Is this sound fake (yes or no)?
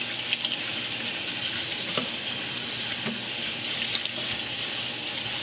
no